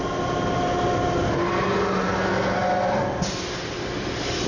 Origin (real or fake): real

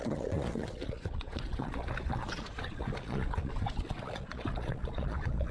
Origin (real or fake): fake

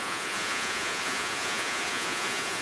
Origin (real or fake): fake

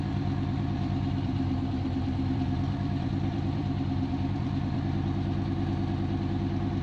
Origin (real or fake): fake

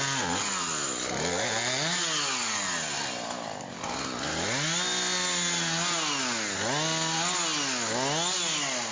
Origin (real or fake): real